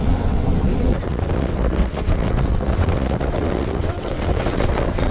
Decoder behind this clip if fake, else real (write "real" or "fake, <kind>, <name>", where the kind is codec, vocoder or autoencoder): fake, vocoder, WaveNeXt